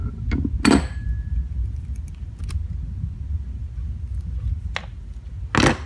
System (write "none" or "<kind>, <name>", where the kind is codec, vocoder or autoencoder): none